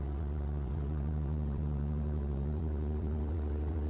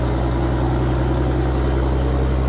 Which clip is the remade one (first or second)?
first